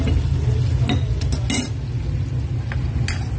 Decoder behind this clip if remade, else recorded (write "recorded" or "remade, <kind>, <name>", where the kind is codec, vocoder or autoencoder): recorded